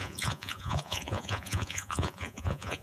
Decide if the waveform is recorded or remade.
remade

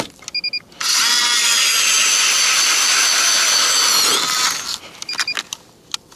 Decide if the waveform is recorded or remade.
recorded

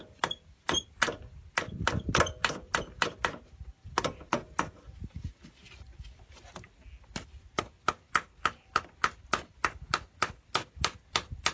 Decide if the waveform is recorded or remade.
recorded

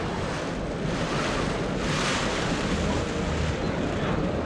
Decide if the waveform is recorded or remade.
recorded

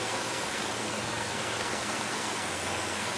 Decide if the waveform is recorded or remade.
remade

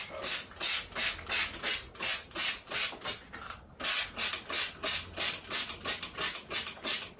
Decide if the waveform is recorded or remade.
recorded